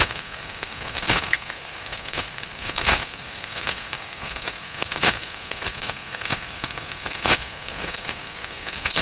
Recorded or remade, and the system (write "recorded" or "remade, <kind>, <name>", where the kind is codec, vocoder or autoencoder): remade, codec, SNAC